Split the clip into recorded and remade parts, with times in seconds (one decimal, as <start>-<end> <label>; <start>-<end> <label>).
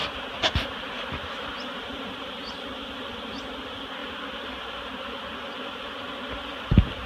0.0-2.9 remade; 2.9-4.0 recorded; 4.0-5.8 remade; 5.8-7.1 recorded